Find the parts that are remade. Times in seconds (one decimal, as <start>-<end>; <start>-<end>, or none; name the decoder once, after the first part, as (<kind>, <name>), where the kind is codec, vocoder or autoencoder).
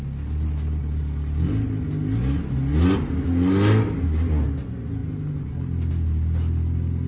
none